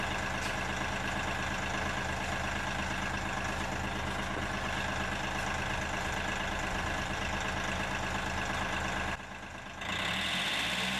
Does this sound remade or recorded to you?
recorded